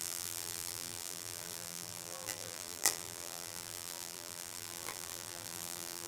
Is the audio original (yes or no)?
no